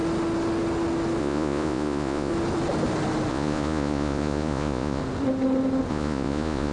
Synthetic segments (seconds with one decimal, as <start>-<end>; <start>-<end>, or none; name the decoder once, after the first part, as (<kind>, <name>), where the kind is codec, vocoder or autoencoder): 1.2-2.3 (vocoder, Vocos); 3.3-5.0; 5.9-6.7

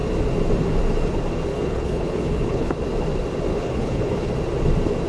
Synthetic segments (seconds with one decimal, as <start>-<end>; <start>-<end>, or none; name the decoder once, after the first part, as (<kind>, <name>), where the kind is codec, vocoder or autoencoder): 1.5-2.7 (codec, HILCodec); 3.5-4.3